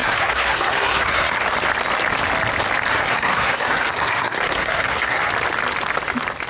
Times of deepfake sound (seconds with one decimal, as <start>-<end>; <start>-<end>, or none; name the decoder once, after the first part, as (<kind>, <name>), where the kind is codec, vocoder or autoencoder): 0.0-1.4 (codec, SNAC); 2.9-5.3